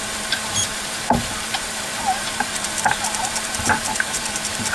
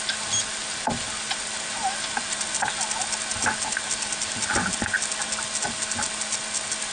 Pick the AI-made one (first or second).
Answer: first